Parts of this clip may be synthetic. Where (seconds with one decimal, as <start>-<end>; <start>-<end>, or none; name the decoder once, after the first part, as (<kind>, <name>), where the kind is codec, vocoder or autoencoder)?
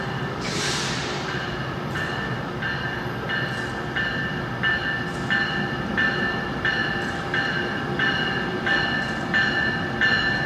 none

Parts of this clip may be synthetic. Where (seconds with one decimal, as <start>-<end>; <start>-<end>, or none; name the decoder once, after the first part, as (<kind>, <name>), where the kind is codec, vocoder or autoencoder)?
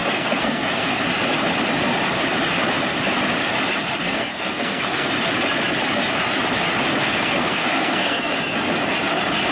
0.0-1.0 (codec, SNAC); 4.0-5.1; 7.0-8.3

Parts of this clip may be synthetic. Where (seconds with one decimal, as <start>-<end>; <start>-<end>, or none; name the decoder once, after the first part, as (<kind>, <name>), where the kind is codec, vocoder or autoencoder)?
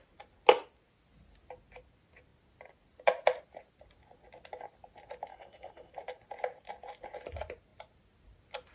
5.3-5.9 (codec, HILCodec)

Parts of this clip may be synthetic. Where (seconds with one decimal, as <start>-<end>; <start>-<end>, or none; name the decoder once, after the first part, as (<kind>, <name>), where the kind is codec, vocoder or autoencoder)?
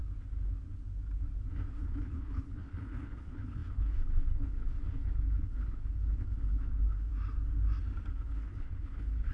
1.7-7.1 (codec, HILCodec); 8.1-9.3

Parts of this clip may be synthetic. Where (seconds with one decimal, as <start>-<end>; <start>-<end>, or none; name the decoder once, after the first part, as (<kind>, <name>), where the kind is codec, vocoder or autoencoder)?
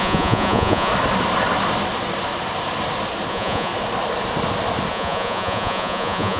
0.0-0.9 (vocoder, Vocos); 3.3-3.7; 4.9-6.4